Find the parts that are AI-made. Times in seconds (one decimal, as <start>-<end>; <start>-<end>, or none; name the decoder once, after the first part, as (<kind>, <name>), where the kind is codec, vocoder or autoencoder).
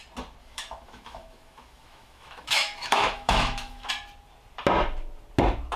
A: 0.4-3.9 (autoencoder, DAC-VAE)